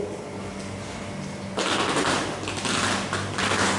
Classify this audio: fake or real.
real